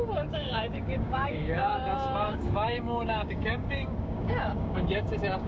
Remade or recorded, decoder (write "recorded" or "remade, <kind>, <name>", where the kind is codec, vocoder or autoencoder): remade, codec, DAC